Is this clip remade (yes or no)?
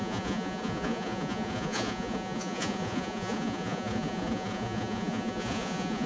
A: yes